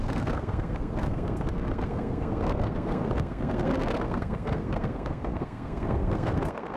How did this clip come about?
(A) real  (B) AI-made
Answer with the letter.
B